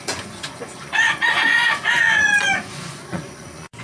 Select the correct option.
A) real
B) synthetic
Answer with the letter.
B